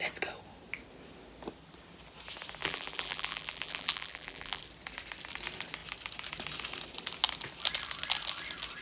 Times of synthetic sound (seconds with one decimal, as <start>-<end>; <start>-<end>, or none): 2.6-4.6